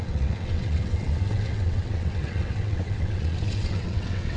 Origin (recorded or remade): remade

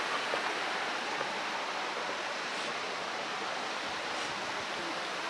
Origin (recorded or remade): recorded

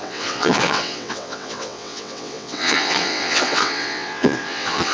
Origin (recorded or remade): remade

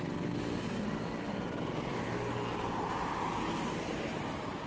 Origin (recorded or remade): recorded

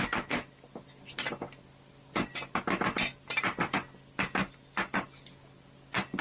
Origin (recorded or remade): recorded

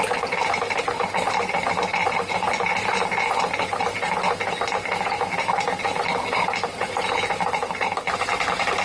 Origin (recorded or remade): recorded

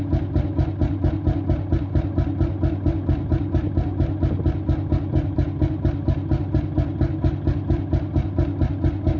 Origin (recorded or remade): recorded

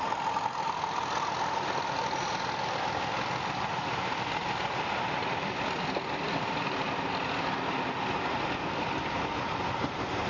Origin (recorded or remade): recorded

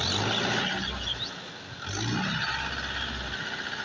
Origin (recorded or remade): recorded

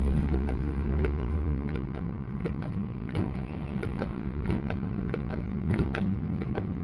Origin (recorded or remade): remade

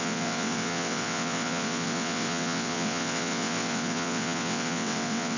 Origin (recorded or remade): remade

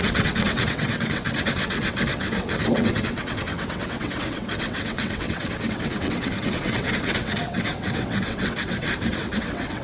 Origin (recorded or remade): remade